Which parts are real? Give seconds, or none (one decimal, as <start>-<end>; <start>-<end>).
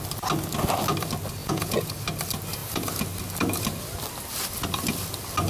0.0-1.4; 1.9-5.5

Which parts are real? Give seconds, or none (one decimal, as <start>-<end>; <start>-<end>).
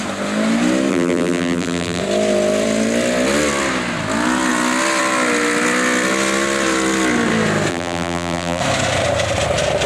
0.0-0.9; 2.0-7.7; 8.6-9.9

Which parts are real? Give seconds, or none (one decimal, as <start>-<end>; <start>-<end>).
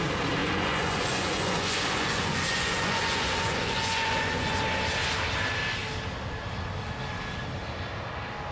0.0-0.4; 4.6-8.5